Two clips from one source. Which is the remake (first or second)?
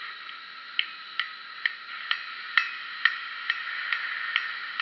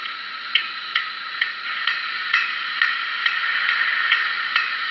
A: second